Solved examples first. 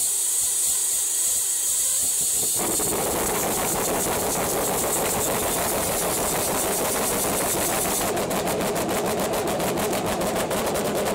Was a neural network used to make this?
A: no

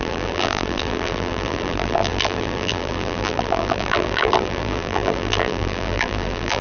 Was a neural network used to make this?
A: yes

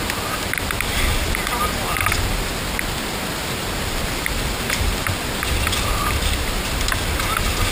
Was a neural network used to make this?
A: no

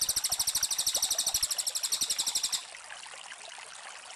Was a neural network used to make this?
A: no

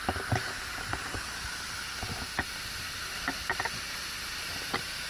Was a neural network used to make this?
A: no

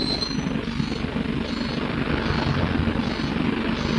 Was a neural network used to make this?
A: no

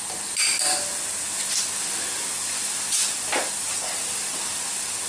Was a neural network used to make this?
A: no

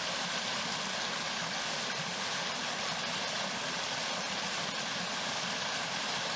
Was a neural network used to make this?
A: no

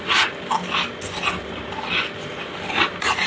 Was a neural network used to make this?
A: no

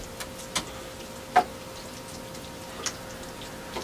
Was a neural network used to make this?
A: no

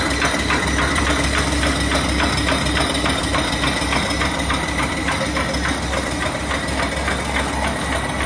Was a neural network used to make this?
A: yes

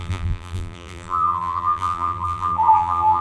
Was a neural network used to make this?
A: yes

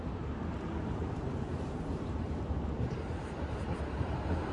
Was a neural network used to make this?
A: yes